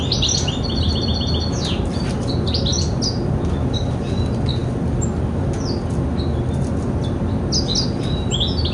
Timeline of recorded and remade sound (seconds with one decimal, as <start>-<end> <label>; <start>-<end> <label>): 0.0-8.7 recorded